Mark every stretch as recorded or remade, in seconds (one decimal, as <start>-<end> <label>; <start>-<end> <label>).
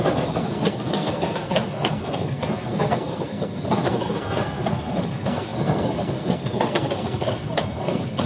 0.0-8.3 remade